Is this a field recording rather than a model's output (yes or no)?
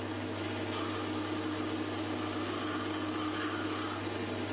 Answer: yes